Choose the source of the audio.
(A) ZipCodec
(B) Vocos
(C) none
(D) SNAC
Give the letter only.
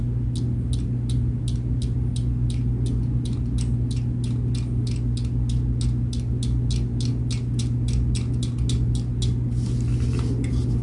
C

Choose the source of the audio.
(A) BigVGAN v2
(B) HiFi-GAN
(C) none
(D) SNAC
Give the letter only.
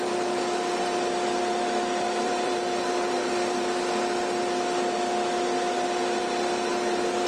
A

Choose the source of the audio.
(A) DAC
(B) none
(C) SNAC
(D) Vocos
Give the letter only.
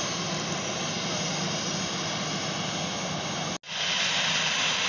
B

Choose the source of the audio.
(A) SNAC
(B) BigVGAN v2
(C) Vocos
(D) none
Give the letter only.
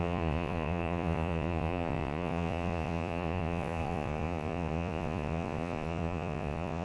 C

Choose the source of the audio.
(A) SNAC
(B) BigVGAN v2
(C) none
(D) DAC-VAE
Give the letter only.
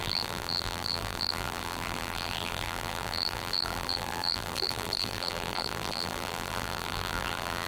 B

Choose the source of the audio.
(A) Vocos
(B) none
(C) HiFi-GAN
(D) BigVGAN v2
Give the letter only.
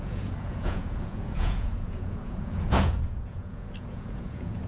A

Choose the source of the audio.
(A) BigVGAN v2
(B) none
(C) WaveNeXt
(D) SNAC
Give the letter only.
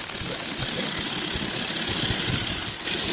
B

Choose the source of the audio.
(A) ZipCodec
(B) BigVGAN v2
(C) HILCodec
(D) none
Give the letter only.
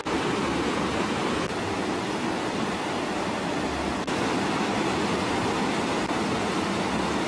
D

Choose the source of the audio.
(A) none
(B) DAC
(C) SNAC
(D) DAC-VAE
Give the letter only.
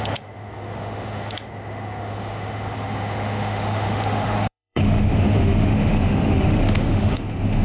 D